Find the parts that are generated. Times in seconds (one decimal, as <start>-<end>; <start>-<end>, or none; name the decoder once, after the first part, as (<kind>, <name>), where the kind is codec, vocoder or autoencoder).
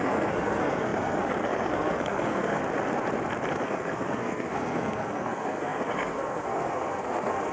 0.0-2.6 (codec, SNAC); 3.5-7.5